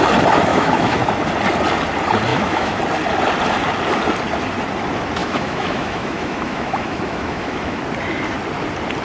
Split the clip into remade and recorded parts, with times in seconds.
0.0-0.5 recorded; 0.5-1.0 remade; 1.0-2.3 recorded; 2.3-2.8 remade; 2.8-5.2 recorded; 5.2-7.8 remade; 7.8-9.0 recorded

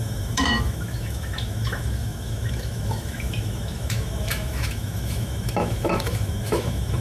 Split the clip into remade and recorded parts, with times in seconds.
0.0-7.0 remade

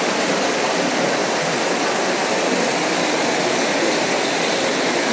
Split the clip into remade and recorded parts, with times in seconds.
0.0-5.1 recorded